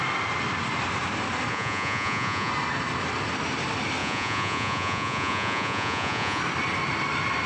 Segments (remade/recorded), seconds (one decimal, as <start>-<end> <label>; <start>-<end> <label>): 0.0-1.5 recorded; 1.5-2.5 remade; 2.5-4.0 recorded; 4.0-6.4 remade; 6.4-7.5 recorded